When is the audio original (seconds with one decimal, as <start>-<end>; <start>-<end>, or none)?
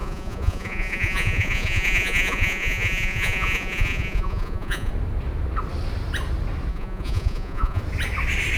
4.9-6.7; 7.8-8.6